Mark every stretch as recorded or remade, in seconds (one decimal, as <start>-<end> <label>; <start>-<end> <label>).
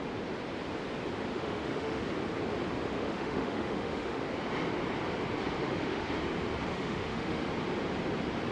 0.0-1.3 recorded; 1.3-2.0 remade; 2.0-2.9 recorded; 2.9-4.2 remade; 4.2-5.6 recorded; 5.6-6.1 remade; 6.1-6.7 recorded; 6.7-7.5 remade; 7.5-8.5 recorded